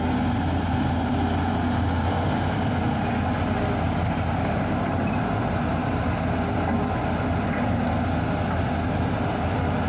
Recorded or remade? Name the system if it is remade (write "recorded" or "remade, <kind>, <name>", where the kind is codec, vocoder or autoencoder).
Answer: recorded